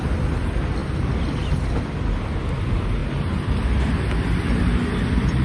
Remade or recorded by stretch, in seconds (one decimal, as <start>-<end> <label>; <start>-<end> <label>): 0.0-5.4 recorded